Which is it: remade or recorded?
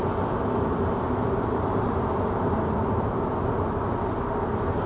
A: recorded